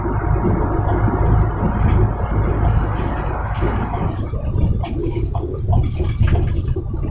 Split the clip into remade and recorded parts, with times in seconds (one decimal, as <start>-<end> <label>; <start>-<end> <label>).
0.0-3.4 recorded; 3.4-4.1 remade; 4.1-5.0 recorded; 5.0-5.6 remade; 5.6-7.1 recorded